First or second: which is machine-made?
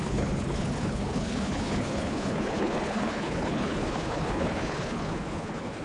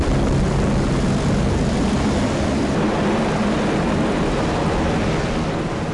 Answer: first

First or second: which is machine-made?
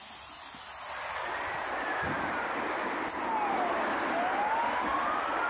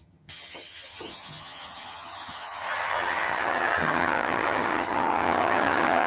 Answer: second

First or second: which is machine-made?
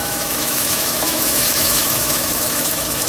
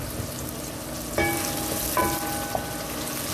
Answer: first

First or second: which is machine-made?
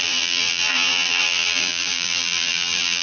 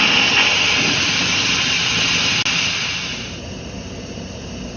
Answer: first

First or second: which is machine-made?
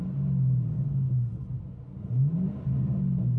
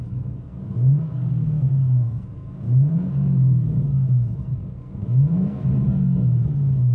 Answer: second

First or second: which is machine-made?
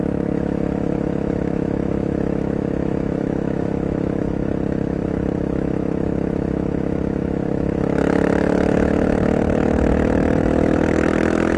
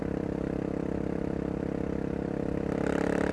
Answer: first